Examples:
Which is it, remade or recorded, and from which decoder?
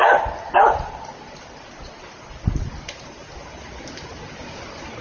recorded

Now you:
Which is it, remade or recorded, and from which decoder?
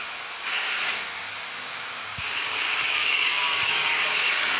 remade, codec, DAC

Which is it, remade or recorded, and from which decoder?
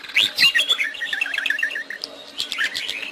recorded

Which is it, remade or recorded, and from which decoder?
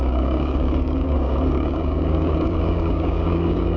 remade, codec, DAC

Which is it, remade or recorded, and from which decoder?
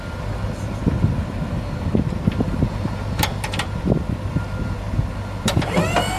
recorded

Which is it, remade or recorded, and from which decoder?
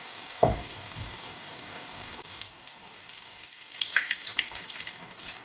remade, codec, DAC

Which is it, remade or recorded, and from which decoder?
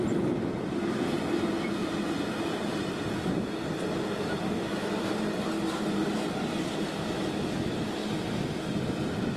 recorded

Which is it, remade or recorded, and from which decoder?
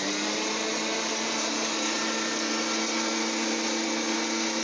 recorded